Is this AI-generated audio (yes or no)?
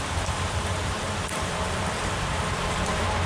yes